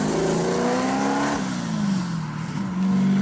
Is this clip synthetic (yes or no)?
no